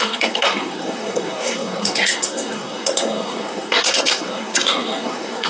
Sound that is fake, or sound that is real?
fake